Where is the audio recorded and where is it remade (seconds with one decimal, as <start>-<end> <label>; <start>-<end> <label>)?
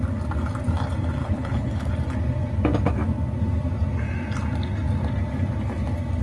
0.0-1.2 recorded; 1.2-1.9 remade; 1.9-6.2 recorded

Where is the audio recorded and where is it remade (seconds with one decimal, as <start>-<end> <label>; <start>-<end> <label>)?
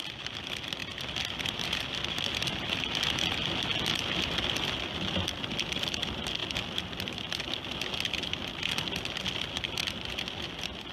0.0-10.9 recorded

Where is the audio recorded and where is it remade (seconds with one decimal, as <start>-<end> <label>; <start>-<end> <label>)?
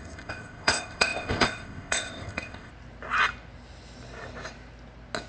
0.0-2.7 remade; 2.7-5.3 recorded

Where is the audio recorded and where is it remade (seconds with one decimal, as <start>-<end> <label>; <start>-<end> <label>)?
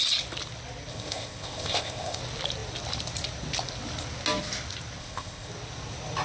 0.0-0.9 recorded; 0.9-2.2 remade; 2.2-5.0 recorded; 5.0-5.5 remade; 5.5-6.2 recorded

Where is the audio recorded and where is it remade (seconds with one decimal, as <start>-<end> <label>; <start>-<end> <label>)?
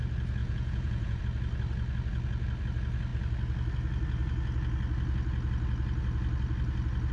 0.0-0.4 recorded; 0.4-1.2 remade; 1.2-7.1 recorded